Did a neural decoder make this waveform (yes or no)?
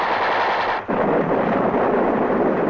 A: no